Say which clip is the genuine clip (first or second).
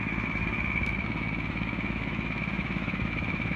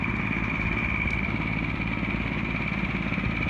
second